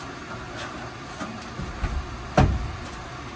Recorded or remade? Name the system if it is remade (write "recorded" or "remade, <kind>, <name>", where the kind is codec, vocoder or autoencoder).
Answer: recorded